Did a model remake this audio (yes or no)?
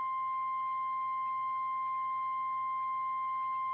no